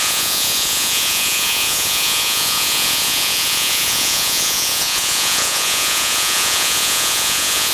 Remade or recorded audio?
remade